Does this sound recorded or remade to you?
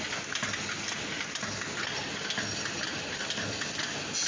recorded